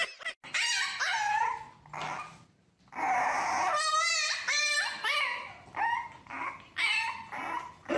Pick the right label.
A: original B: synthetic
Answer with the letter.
A